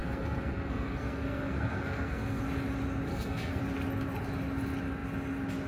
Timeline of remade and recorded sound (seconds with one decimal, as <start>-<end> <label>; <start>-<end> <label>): 0.0-2.4 remade; 2.4-3.1 recorded; 3.1-3.6 remade; 3.6-5.7 recorded